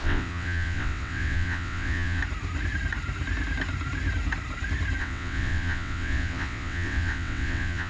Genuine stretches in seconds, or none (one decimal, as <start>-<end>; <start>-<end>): 2.2-5.0